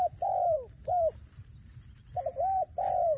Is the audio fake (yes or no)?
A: yes